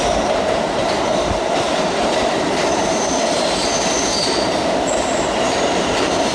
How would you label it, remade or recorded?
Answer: remade